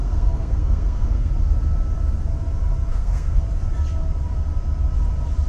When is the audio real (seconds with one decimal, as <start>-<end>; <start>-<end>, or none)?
1.3-2.9; 3.4-5.5